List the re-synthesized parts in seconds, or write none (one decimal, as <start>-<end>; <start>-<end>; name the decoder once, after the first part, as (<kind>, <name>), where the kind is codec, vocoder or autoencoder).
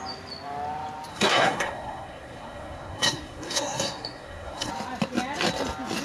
1.1-4.7 (codec, SNAC)